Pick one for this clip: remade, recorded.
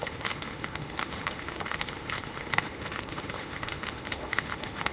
remade